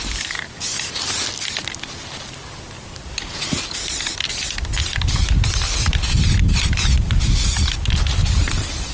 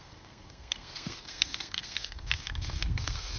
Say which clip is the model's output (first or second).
second